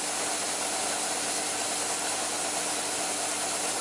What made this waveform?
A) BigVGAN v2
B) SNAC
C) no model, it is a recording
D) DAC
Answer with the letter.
C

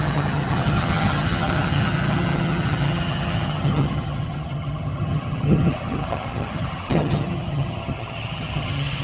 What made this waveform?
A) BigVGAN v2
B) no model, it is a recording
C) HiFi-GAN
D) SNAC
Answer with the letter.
C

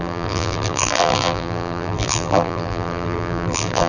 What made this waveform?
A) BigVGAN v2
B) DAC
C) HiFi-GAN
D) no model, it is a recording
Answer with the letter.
A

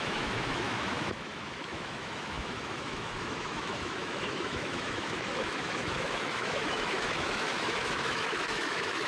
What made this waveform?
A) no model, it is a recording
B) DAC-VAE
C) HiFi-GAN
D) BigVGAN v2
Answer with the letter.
B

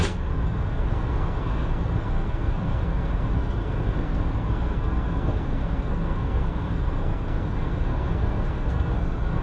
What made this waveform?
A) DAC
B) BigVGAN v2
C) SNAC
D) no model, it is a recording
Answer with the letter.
C